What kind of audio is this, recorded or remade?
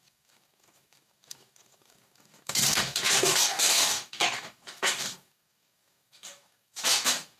remade